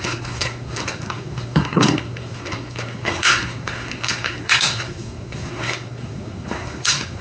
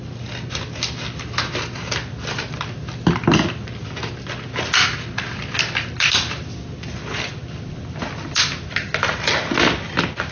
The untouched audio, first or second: second